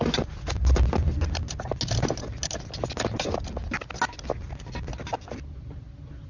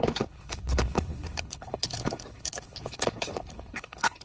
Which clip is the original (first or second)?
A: first